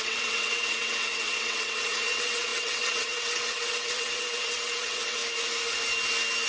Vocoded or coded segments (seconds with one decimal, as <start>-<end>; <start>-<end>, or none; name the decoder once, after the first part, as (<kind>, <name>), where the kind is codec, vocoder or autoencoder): 0.0-5.2 (vocoder, WaveNeXt)